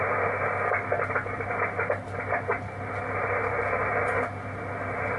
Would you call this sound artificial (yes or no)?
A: no